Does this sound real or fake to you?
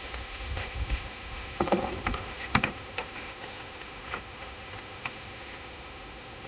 fake